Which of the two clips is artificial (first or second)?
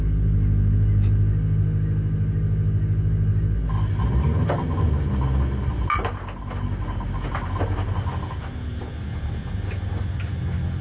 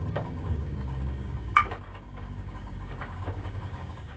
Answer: second